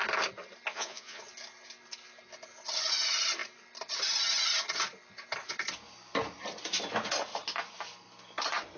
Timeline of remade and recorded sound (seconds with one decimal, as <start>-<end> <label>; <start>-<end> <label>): 0.0-0.7 recorded; 0.7-1.2 remade; 1.2-8.8 recorded